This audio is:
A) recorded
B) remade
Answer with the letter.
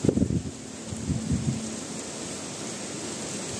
A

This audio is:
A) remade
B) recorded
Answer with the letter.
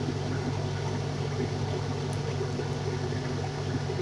B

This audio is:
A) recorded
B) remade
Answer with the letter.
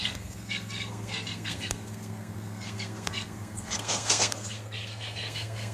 B